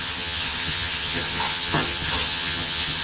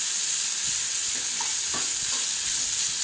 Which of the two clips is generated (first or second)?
first